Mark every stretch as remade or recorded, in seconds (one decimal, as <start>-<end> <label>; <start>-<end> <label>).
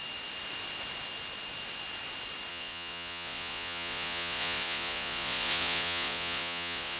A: 0.0-2.5 recorded; 2.5-7.0 remade